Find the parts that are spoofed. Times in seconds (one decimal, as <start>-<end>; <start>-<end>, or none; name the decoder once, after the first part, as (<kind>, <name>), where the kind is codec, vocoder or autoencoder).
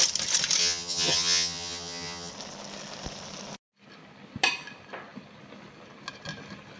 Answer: 0.6-2.3 (vocoder, HiFi-GAN)